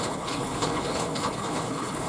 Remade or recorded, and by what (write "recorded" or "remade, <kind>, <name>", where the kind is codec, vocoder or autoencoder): remade, codec, HILCodec